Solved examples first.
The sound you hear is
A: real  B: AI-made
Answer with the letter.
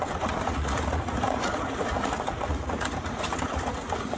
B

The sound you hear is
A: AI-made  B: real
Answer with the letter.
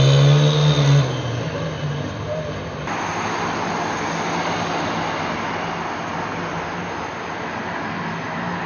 B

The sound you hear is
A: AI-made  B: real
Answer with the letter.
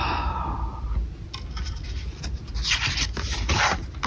B